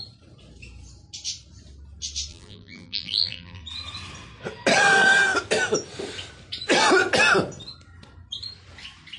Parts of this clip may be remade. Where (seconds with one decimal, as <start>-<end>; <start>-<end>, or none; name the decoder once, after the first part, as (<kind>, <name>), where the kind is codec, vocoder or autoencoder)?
2.3-3.6 (vocoder, BigVGAN v2)